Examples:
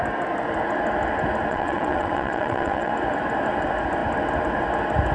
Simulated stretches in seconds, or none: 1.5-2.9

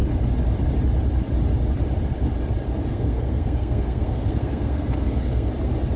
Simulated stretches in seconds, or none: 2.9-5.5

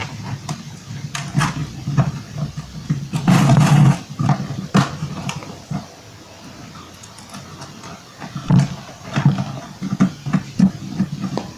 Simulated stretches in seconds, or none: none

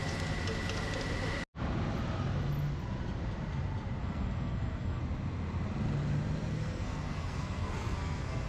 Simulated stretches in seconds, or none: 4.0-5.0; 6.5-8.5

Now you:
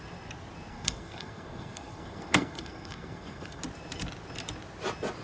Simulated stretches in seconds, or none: 0.7-3.6